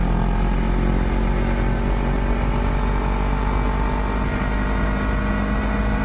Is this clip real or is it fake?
real